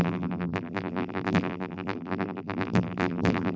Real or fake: fake